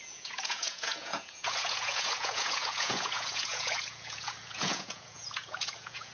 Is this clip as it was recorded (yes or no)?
no